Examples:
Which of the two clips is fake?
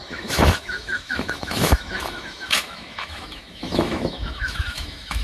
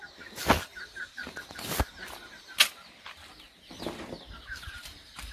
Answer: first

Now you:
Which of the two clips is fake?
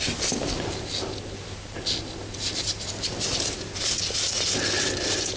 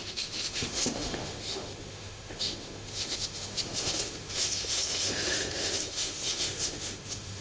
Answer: second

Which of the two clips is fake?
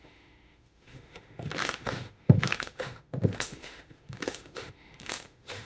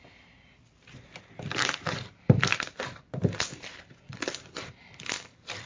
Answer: first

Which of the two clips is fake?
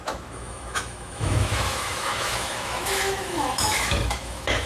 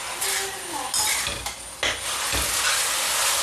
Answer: first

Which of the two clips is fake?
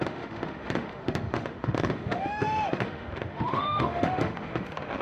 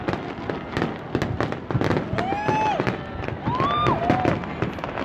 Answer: first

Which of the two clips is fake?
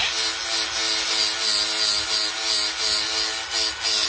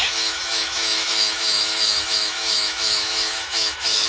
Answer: second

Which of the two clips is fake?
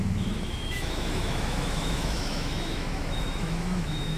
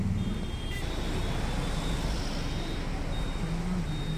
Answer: first